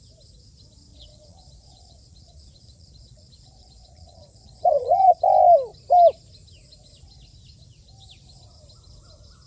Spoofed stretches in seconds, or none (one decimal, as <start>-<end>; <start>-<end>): 0.9-5.2